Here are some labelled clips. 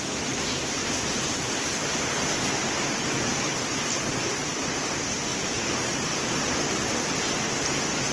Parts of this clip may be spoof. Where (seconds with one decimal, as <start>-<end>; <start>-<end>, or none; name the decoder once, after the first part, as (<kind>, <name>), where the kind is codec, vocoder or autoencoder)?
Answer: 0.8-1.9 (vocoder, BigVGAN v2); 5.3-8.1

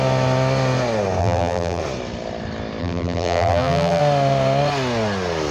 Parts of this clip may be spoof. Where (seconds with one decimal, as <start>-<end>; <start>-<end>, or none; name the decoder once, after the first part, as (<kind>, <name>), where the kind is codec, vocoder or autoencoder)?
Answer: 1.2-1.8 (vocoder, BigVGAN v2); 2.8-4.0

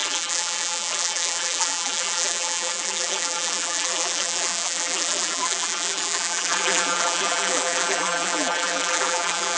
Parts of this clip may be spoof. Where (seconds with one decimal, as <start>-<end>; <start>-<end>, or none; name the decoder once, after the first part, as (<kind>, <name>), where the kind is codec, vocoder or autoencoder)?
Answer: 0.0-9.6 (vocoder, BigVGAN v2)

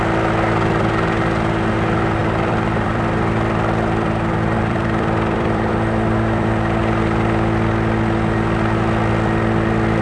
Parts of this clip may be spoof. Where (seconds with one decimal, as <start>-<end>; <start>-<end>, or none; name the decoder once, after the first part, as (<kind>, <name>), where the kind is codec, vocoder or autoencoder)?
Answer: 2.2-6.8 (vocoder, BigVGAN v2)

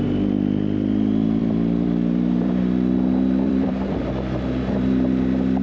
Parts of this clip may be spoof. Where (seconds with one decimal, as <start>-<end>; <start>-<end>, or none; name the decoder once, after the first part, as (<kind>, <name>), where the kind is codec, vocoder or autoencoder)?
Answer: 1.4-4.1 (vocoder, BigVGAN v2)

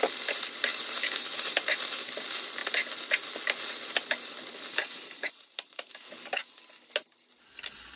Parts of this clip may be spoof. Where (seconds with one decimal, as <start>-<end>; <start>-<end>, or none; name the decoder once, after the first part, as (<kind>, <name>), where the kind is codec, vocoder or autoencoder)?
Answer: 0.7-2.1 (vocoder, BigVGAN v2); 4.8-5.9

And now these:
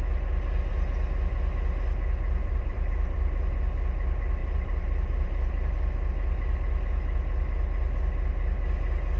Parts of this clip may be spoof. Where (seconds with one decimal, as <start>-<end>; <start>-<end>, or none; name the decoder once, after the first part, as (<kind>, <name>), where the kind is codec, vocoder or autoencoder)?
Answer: 2.4-3.5 (vocoder, BigVGAN v2); 4.4-5.7